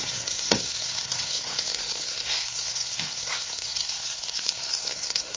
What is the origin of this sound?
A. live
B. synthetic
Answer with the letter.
B